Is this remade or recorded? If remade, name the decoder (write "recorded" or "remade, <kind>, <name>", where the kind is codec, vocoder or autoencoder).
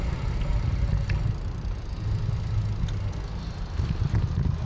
recorded